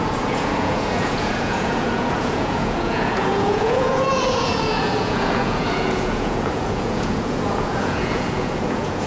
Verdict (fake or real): fake